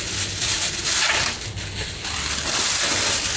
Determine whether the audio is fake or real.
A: real